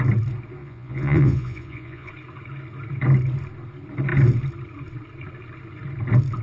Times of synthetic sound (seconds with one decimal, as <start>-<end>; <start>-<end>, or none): 0.6-2.1